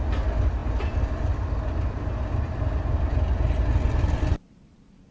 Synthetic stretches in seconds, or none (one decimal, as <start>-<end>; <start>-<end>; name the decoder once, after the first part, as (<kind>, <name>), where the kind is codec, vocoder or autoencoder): none